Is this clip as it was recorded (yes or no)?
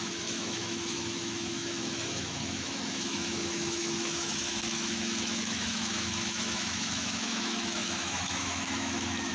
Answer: no